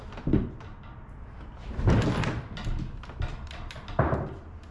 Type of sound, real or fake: real